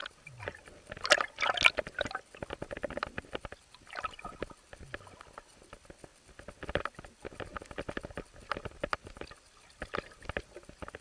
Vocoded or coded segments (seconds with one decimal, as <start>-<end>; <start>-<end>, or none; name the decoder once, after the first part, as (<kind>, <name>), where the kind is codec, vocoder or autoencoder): none